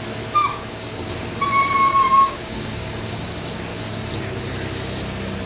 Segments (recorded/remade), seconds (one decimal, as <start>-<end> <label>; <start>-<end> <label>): 0.0-0.4 recorded; 0.4-1.1 remade; 1.1-1.9 recorded; 1.9-3.2 remade; 3.2-5.5 recorded